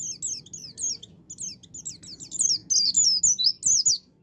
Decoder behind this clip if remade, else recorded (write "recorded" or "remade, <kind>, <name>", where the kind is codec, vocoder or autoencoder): recorded